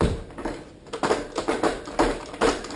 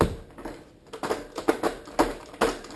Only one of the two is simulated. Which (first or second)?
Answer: first